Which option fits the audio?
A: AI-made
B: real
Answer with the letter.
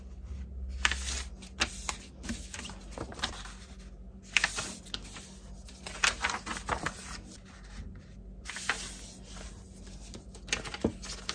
B